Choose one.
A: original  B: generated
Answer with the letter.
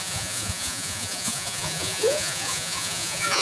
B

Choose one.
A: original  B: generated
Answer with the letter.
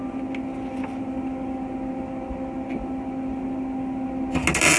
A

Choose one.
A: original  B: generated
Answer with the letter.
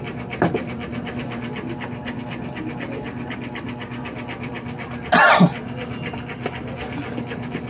A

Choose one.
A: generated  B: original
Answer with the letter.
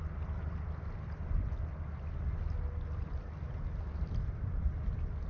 B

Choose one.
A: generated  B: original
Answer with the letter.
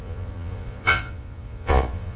A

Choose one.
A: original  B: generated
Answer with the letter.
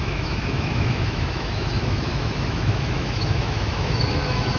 B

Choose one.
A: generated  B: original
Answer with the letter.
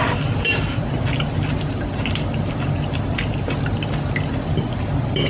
B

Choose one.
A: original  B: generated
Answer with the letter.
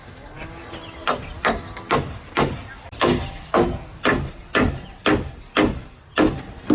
A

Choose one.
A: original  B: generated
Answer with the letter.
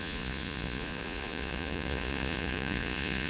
B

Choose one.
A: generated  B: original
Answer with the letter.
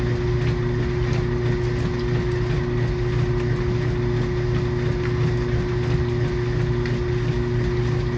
B